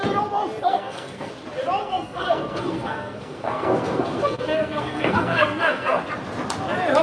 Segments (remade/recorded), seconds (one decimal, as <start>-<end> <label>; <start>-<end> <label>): 0.0-0.6 recorded; 0.6-1.3 remade; 1.3-1.8 recorded; 1.8-6.0 remade; 6.0-7.0 recorded